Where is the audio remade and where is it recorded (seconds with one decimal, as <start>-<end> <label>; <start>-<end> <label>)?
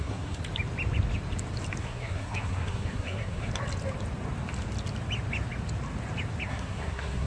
0.0-0.4 remade; 0.4-1.8 recorded; 1.8-3.5 remade; 3.5-6.5 recorded; 6.5-7.3 remade